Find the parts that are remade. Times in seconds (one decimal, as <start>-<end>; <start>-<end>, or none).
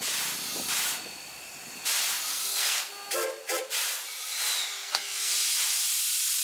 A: 2.3-2.9; 4.8-5.3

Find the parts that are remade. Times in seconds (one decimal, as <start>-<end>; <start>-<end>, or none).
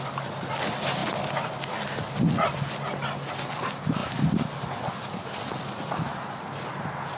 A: none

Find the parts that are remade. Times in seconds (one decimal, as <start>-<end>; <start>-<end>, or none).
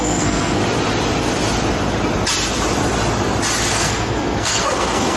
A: 0.0-0.6; 3.7-5.2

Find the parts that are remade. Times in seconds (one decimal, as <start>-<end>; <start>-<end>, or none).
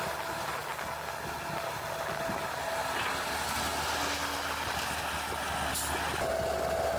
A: none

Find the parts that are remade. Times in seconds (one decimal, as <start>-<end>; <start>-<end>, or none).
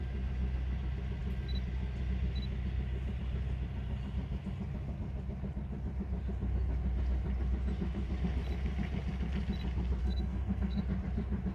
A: 10.0-10.8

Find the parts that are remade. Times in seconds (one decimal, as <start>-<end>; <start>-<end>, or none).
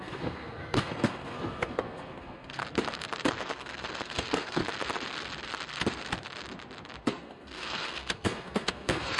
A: 0.0-2.6; 3.4-4.6; 7.0-9.2